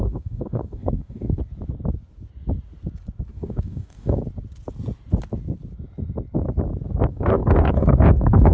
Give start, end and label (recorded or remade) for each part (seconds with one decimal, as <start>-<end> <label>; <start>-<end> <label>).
0.0-1.4 remade; 1.4-3.3 recorded; 3.3-4.2 remade; 4.2-7.1 recorded; 7.1-8.5 remade